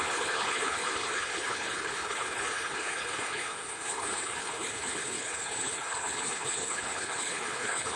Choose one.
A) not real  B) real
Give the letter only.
A